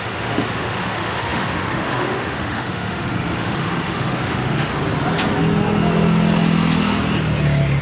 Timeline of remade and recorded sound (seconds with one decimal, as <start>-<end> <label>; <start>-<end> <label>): 0.0-4.7 remade; 4.7-7.8 recorded